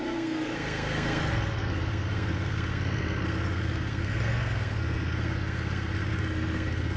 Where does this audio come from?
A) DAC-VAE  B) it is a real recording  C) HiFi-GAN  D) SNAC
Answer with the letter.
D